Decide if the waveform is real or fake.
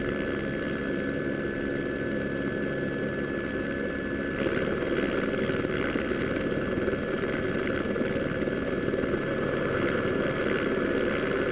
real